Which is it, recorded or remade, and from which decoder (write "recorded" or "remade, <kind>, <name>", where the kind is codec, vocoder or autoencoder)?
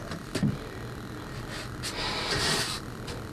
recorded